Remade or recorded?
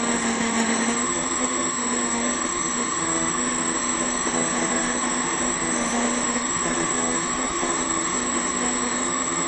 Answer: remade